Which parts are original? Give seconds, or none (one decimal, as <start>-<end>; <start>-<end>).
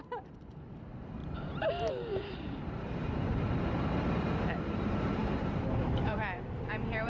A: 1.2-1.9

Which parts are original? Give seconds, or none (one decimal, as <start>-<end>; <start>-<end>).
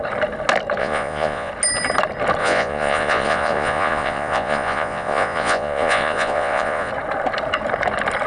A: 0.0-0.8; 1.5-2.4; 6.9-8.3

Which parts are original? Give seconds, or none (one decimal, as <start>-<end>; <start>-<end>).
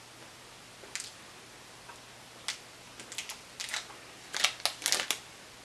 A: 0.0-5.6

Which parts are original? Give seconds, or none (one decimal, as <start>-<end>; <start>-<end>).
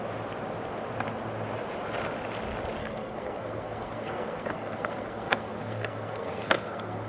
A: 0.0-2.8